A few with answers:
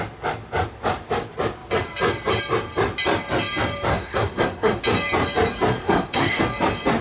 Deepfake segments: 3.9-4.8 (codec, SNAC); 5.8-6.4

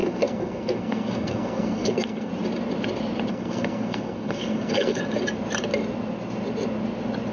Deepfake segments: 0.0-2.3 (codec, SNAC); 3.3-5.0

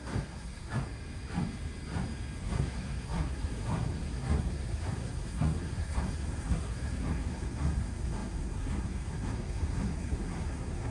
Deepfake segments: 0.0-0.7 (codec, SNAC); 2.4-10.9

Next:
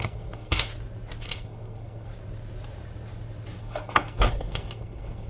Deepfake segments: 0.0-0.7 (codec, SNAC); 1.2-2.1; 3.6-5.3

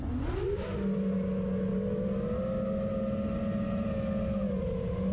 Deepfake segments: none